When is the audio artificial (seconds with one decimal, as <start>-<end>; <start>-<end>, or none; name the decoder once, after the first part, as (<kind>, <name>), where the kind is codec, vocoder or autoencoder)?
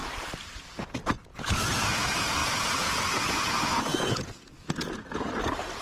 0.8-5.8 (vocoder, Vocos)